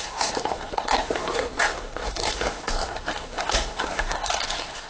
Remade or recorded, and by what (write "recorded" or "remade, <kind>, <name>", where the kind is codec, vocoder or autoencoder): remade, codec, SNAC